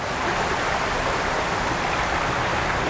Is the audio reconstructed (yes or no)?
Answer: no